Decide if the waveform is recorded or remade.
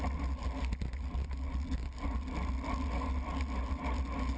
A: recorded